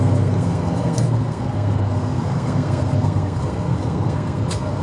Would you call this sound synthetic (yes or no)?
yes